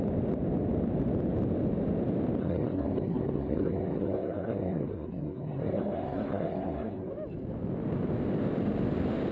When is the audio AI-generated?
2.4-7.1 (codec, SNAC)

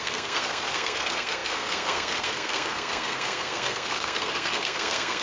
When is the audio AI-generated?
0.0-5.2 (codec, SNAC)

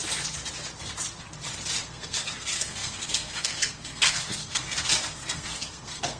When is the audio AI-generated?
1.8-6.2 (codec, SNAC)

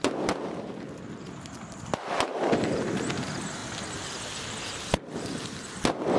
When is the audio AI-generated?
none

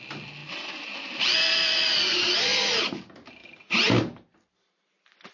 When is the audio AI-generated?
none

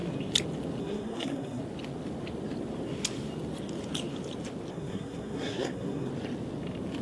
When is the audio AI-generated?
0.8-1.6 (codec, SNAC); 4.7-6.1